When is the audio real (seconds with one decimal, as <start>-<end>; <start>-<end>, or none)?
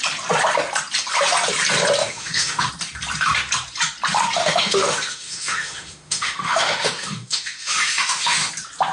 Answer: 0.0-2.0; 2.7-4.4; 8.5-8.9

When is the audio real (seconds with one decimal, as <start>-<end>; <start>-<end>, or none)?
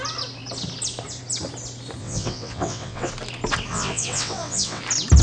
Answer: 0.0-2.0; 3.1-3.7; 4.8-5.2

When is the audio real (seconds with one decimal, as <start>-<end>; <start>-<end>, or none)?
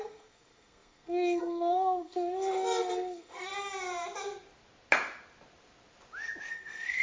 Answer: 3.5-6.5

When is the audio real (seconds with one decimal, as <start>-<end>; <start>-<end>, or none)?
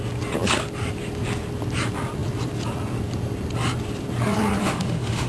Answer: 0.0-4.6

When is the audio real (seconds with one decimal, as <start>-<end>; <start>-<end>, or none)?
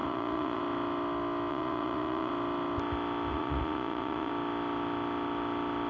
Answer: 0.6-1.5; 2.3-3.3; 4.3-5.9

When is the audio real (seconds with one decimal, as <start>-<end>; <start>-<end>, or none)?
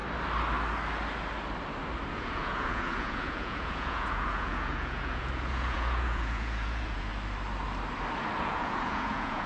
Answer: 0.0-2.1; 7.1-8.4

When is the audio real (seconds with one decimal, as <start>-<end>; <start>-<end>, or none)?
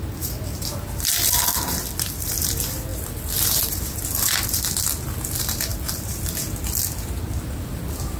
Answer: 0.0-1.5; 2.3-2.9; 4.6-5.7; 6.4-8.2